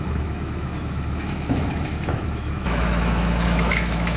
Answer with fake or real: fake